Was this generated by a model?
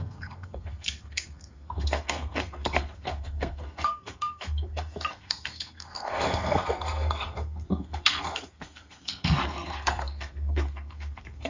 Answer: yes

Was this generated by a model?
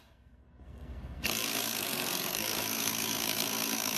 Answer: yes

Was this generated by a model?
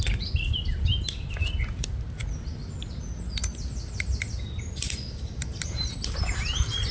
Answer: no